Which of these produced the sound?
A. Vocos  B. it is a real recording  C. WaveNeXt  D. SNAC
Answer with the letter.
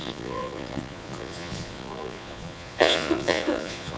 A